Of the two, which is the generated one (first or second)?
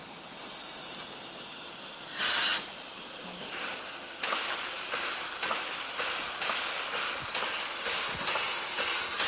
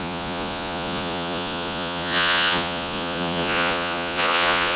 second